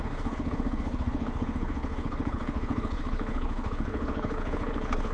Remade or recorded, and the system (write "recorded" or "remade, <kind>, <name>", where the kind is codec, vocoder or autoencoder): remade, codec, HILCodec